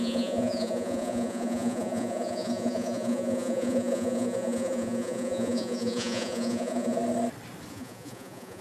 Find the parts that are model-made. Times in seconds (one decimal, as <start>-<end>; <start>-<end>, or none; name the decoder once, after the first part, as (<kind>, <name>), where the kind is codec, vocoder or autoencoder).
0.0-7.0 (vocoder, Vocos); 7.7-8.6